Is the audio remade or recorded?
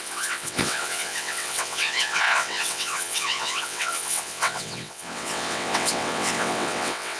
remade